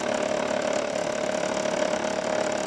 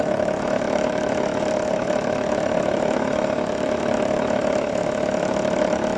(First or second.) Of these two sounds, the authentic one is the first